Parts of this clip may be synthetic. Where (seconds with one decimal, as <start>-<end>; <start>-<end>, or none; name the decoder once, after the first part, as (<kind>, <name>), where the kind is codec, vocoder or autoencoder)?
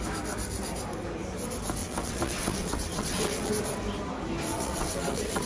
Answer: 1.8-3.5 (vocoder, WaveNeXt); 4.5-5.5